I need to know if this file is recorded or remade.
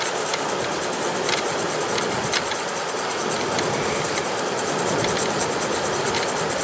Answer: recorded